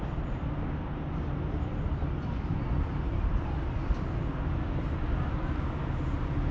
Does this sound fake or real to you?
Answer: real